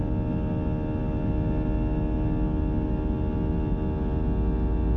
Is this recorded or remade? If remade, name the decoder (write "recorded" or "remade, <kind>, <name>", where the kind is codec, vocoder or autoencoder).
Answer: recorded